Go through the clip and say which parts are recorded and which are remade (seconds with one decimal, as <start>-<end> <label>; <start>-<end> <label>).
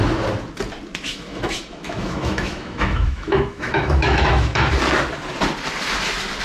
0.0-1.1 recorded; 1.1-4.7 remade; 4.7-6.4 recorded